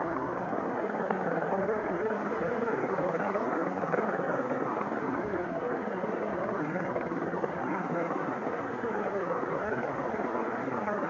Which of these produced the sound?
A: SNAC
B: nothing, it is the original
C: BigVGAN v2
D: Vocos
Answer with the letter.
A